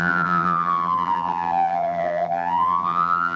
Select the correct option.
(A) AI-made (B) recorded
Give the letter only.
A